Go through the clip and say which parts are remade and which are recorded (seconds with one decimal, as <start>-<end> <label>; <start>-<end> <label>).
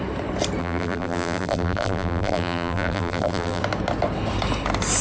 0.0-0.6 recorded; 0.6-3.6 remade; 3.6-5.0 recorded